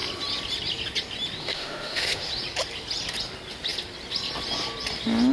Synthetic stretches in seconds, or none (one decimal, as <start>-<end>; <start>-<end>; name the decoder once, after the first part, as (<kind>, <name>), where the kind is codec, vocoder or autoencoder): 1.4-2.3 (autoencoder, DAC-VAE)